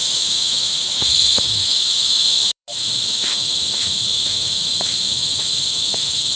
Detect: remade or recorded remade